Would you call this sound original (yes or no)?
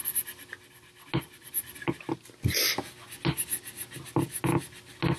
yes